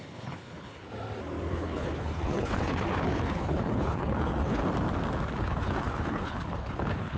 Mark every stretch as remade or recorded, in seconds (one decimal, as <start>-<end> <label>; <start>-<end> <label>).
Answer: 0.0-0.9 remade; 0.9-1.5 recorded; 1.5-4.6 remade; 4.6-5.4 recorded; 5.4-7.2 remade

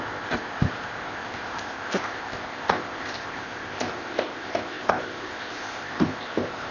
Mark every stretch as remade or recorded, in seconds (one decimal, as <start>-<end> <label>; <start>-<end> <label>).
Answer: 0.0-6.7 remade